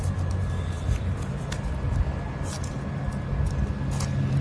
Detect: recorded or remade recorded